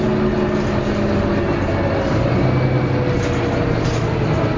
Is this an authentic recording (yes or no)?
yes